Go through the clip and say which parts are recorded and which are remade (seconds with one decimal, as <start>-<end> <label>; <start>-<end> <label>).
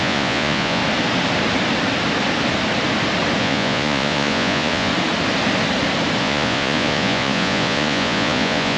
0.0-0.8 remade; 0.8-3.4 recorded; 3.4-4.9 remade; 4.9-6.2 recorded; 6.2-8.8 remade